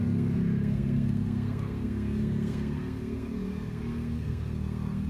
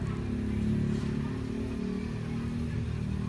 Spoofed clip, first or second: first